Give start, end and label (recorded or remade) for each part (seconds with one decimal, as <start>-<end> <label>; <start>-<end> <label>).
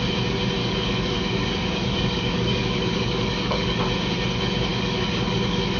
0.0-0.6 recorded; 0.6-3.8 remade; 3.8-4.7 recorded; 4.7-5.8 remade